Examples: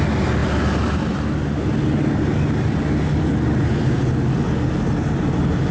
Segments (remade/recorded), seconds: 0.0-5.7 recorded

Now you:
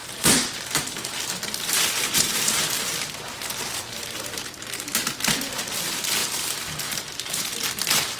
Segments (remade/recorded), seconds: 0.0-4.9 remade; 4.9-6.2 recorded; 6.2-7.4 remade; 7.4-8.2 recorded

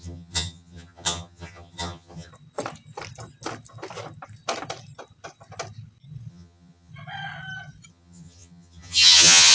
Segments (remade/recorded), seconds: 0.0-2.3 remade; 2.3-6.3 recorded; 6.3-6.9 remade; 6.9-7.9 recorded; 7.9-9.5 remade

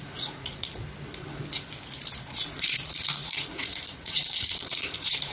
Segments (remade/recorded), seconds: 0.0-0.8 remade; 0.8-2.4 recorded; 2.4-5.3 remade